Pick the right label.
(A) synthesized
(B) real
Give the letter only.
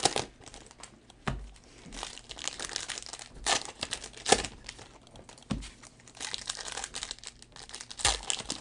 B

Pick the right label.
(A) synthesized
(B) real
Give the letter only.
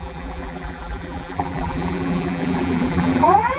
A